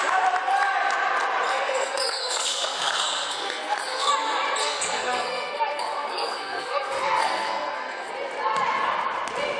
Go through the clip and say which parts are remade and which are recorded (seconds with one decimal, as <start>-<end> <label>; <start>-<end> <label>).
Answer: 0.0-1.5 recorded; 1.5-4.1 remade; 4.1-4.6 recorded; 4.6-8.1 remade; 8.1-9.6 recorded